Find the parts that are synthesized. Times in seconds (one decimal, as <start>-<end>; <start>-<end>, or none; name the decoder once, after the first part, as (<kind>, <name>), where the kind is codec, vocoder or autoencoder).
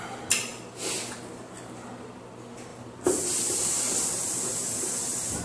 0.5-2.3 (vocoder, BigVGAN v2); 2.7-5.0